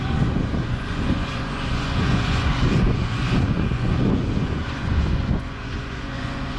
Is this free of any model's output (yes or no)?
no